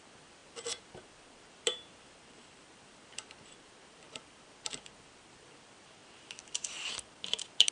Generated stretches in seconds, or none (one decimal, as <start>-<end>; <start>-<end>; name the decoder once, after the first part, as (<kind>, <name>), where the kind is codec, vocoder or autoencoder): 0.0-7.7 (vocoder, BigVGAN v2)